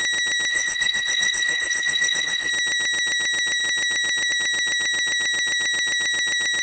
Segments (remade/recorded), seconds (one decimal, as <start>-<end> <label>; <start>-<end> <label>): 0.0-0.5 recorded; 0.5-2.5 remade; 2.5-6.6 recorded

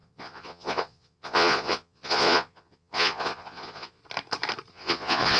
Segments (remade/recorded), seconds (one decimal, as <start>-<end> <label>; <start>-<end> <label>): 0.0-4.0 remade; 4.0-4.7 recorded; 4.7-5.4 remade

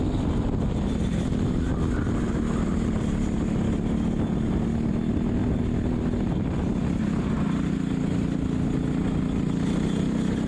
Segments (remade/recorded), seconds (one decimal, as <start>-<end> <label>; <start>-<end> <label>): 0.0-10.5 recorded

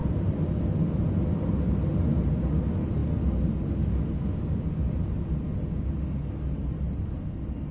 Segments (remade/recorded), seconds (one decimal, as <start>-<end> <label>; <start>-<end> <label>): 0.0-7.7 recorded

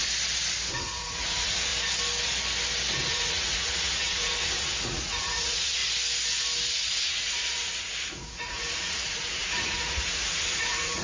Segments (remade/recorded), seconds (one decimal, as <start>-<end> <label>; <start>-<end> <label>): 0.0-0.7 recorded; 0.7-1.7 remade; 1.7-3.1 recorded; 3.1-5.8 remade; 5.8-6.7 recorded; 6.7-11.0 remade

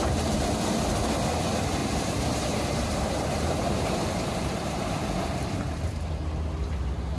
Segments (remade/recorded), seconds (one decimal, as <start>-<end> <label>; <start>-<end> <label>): 0.0-1.8 recorded; 1.8-6.1 remade; 6.1-7.2 recorded

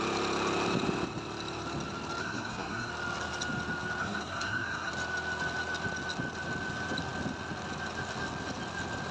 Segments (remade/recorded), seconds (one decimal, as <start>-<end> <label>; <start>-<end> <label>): 0.0-2.2 recorded; 2.2-2.9 remade; 2.9-4.0 recorded; 4.0-4.9 remade; 4.9-9.1 recorded

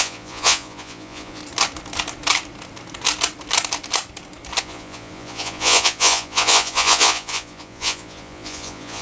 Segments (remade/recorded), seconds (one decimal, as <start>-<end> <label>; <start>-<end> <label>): 0.0-1.4 remade; 1.4-4.6 recorded; 4.6-9.0 remade